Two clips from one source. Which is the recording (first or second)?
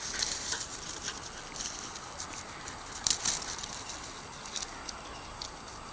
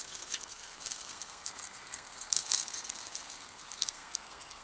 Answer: first